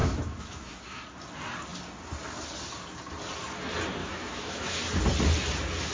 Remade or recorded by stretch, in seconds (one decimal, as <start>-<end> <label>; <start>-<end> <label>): 0.0-1.0 remade; 1.0-4.0 recorded; 4.0-4.8 remade; 4.8-5.9 recorded